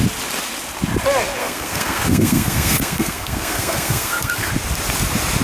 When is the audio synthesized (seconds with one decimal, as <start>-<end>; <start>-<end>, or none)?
1.4-4.5